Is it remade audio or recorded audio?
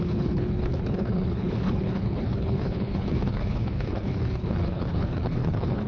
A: remade